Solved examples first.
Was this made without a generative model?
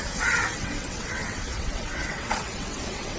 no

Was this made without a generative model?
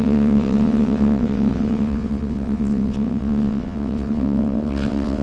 no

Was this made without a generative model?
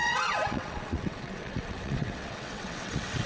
no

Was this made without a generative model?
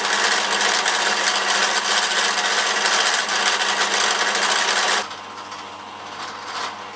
yes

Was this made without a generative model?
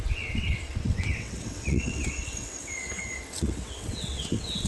no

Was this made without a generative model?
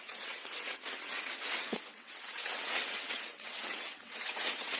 no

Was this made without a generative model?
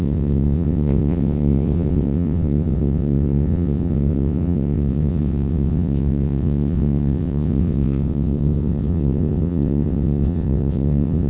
no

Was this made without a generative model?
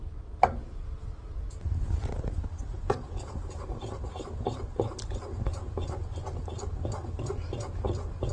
yes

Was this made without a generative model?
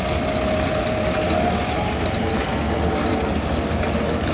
yes